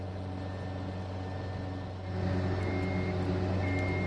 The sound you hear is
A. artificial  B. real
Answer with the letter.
B